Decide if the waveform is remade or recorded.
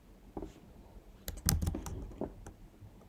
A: recorded